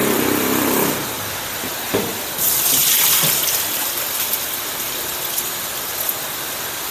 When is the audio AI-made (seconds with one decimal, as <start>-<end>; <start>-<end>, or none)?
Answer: 0.0-1.3; 2.8-5.5

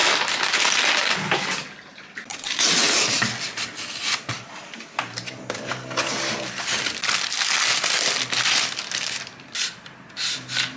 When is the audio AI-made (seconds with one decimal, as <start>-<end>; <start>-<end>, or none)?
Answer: none